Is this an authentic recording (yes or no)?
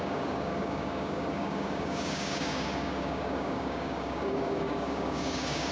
no